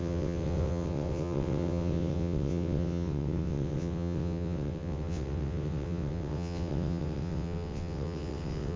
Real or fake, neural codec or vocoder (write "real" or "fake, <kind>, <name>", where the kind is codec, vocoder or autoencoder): fake, vocoder, WaveNeXt